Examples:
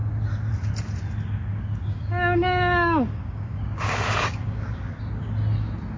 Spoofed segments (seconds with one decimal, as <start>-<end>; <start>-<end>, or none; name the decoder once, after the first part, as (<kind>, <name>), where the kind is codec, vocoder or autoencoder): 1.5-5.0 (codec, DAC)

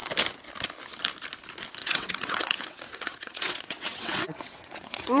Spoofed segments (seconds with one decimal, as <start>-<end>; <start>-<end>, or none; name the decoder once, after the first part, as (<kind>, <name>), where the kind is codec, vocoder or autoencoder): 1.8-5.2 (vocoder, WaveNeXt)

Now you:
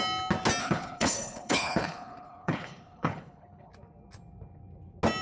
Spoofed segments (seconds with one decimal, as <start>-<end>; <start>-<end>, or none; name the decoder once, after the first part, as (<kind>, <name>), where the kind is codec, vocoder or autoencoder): 0.6-3.7 (codec, HILCodec)

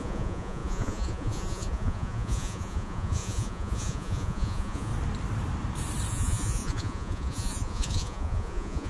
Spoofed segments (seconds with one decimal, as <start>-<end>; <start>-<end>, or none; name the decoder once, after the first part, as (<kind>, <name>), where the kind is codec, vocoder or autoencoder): 0.0-4.9 (vocoder, Vocos); 6.1-8.9